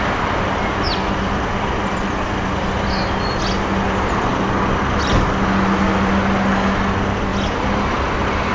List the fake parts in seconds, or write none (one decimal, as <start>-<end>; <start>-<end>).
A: none